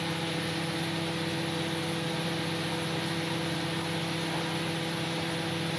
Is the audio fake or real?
real